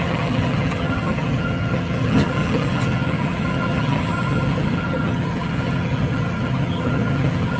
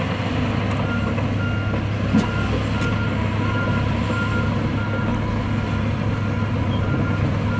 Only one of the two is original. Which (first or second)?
second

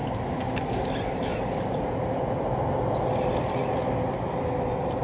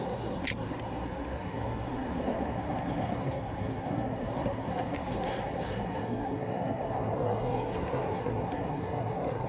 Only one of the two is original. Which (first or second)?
first